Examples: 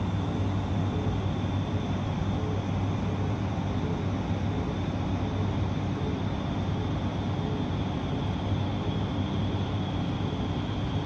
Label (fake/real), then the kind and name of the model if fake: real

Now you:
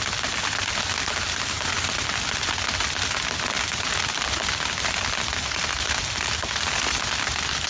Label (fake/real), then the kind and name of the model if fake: real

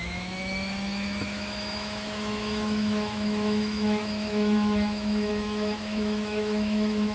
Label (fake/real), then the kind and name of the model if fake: fake, autoencoder, DAC-VAE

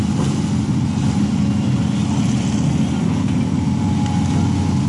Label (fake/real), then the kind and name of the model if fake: real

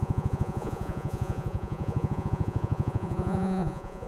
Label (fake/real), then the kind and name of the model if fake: fake, vocoder, Vocos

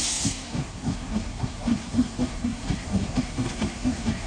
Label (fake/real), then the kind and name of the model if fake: fake, codec, SNAC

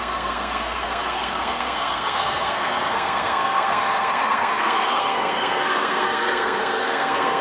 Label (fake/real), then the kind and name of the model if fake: fake, codec, SNAC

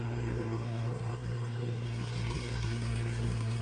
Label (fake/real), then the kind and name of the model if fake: fake, codec, SNAC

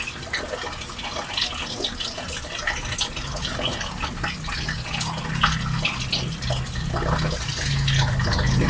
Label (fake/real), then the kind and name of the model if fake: real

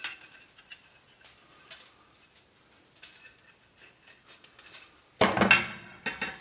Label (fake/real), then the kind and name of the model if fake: real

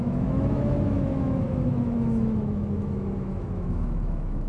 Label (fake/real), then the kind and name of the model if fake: fake, autoencoder, DAC-VAE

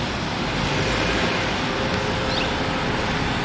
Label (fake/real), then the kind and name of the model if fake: real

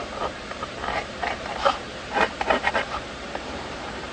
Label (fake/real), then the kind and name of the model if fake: fake, vocoder, BigVGAN v2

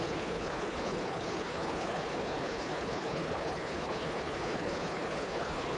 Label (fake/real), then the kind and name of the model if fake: fake, codec, HILCodec